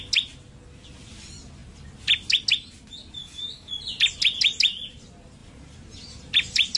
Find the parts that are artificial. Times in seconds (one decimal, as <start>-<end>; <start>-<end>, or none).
3.2-3.8